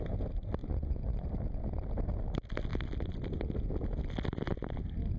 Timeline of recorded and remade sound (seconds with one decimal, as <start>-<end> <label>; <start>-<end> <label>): 0.0-0.6 recorded; 0.6-1.3 remade; 1.3-5.2 recorded